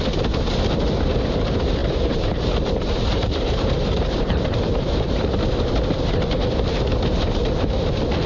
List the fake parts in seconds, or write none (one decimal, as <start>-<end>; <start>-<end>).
1.8-5.4